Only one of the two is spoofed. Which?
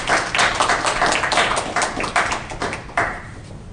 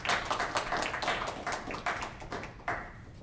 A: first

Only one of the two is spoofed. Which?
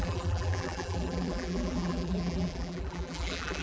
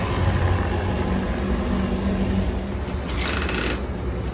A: first